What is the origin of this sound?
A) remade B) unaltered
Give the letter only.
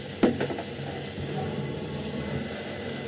B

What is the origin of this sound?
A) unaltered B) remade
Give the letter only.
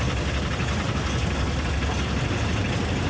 A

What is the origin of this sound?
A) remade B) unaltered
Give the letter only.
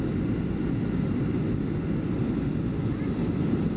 B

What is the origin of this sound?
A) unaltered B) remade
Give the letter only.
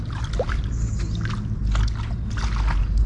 A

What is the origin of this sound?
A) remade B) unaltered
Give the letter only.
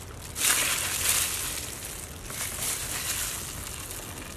B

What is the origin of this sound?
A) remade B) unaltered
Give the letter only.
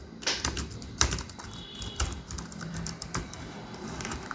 A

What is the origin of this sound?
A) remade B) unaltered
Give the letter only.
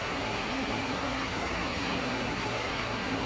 A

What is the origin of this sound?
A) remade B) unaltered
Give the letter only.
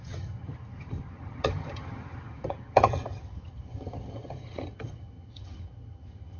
A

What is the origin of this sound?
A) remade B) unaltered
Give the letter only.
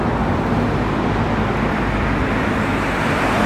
B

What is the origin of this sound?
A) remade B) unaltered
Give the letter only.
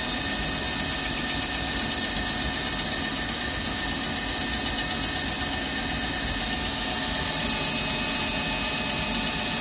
B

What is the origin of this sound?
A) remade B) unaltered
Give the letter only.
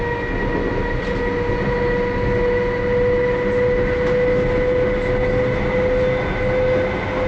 B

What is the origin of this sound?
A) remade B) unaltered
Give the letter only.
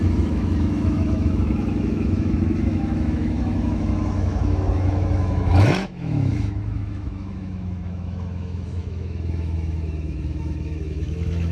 A